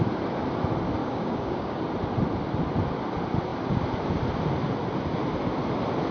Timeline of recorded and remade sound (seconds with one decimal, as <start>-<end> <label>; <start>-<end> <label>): 0.0-1.0 recorded; 1.0-1.8 remade; 1.8-6.1 recorded